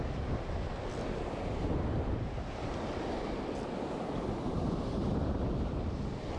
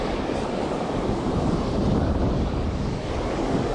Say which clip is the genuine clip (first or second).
first